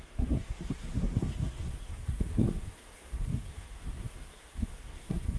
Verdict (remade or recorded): remade